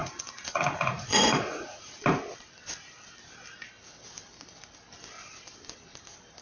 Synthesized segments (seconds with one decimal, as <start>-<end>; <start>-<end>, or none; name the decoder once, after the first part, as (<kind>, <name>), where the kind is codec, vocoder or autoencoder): 0.0-2.0 (vocoder, Vocos)